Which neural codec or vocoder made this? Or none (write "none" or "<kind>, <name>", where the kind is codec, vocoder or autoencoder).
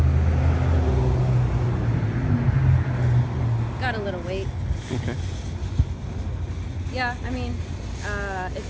none